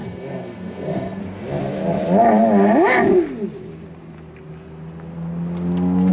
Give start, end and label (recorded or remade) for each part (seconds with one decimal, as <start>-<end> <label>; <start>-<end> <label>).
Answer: 0.0-1.2 remade; 1.2-6.1 recorded